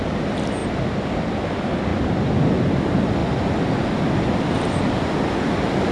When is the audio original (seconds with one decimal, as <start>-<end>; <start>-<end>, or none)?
0.0-0.6; 1.4-5.9

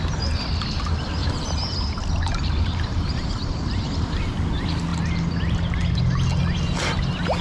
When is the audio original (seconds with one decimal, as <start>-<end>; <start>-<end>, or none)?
0.0-1.2; 3.9-7.4

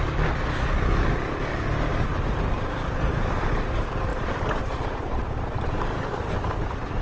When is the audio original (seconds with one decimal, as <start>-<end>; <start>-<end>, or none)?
0.0-1.9; 2.5-4.1; 5.3-7.0

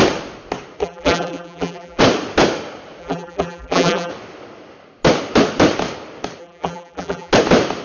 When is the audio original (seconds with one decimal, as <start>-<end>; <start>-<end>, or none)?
0.0-0.8; 2.0-3.0; 4.1-6.4; 7.3-7.8

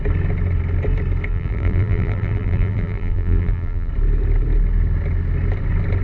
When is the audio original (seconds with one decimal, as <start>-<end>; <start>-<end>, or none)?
0.0-1.3; 3.9-6.0

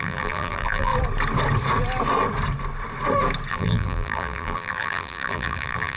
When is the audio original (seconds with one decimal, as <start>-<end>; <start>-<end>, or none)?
0.9-3.5

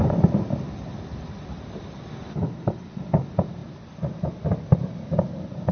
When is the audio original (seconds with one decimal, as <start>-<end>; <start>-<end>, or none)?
0.0-1.1; 2.3-5.7